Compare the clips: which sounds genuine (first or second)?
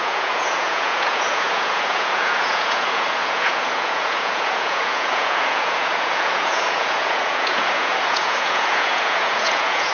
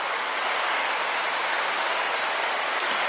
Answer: second